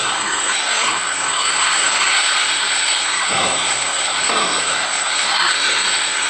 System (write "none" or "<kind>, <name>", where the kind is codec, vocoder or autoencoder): codec, SNAC